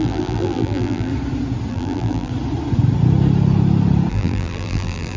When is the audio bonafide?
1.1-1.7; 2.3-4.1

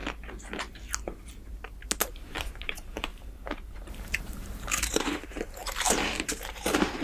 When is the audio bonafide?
0.0-2.1

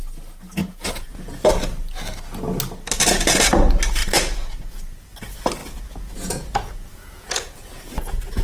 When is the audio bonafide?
0.0-0.6; 1.5-4.0; 4.8-5.6

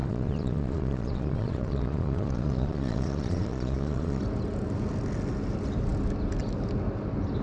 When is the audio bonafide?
4.2-7.4

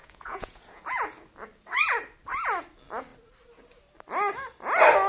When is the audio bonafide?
0.8-5.1

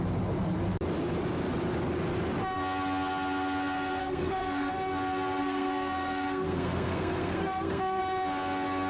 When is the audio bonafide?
0.0-4.0; 4.7-5.4; 8.0-8.9